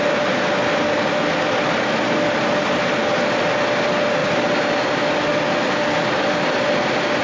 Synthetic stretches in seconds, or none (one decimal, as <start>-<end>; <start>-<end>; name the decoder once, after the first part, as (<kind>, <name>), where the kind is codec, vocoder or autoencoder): none